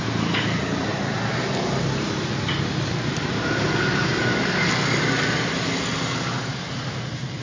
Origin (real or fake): real